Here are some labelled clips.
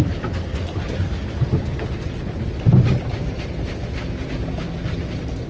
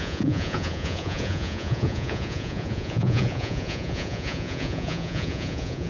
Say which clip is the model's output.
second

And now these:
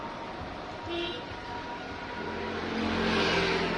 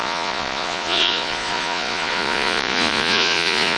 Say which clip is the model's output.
second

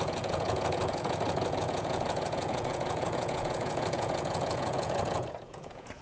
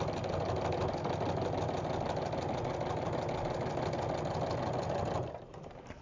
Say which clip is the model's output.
first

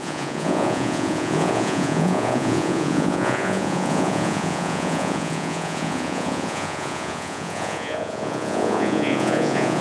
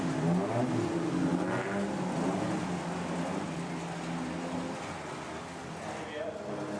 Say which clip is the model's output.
first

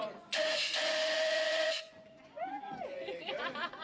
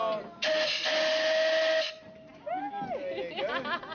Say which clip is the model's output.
first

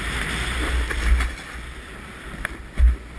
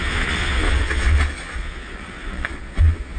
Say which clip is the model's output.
second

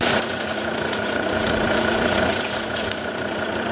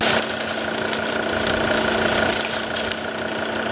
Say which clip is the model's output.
first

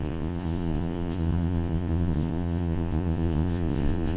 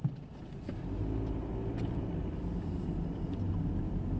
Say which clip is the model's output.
first